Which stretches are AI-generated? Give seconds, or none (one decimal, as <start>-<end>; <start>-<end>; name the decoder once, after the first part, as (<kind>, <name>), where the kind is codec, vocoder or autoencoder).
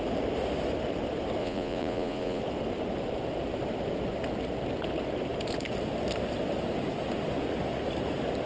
1.4-2.4 (vocoder, Vocos)